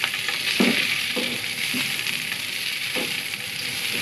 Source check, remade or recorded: remade